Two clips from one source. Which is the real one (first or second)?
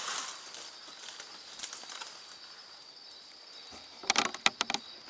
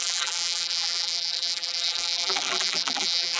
first